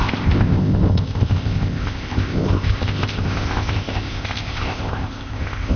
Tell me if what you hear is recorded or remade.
remade